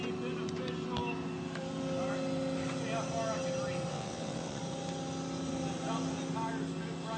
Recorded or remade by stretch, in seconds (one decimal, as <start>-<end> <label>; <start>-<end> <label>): 0.0-3.9 recorded; 3.9-4.6 remade; 4.6-7.2 recorded